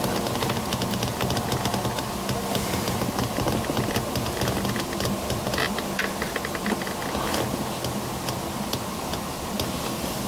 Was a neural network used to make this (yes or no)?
no